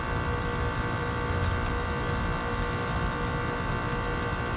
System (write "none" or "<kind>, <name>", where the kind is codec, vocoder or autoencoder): none